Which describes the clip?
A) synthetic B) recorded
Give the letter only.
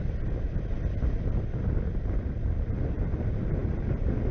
B